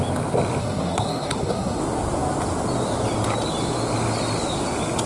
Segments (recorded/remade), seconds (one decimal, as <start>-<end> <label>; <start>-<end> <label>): 0.0-0.6 recorded; 0.6-1.8 remade; 1.8-5.1 recorded